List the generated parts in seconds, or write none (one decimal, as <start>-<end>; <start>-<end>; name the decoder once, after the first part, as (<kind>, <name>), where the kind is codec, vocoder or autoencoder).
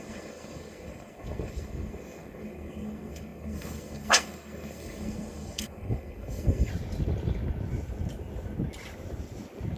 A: 0.0-6.7 (codec, SNAC)